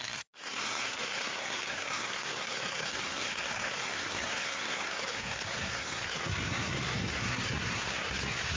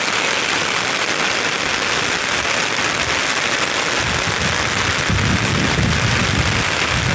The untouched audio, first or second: second